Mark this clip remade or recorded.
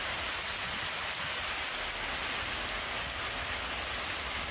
recorded